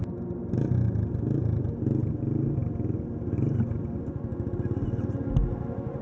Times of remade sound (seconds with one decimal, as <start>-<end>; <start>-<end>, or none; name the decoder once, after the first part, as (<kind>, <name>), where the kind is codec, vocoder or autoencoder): none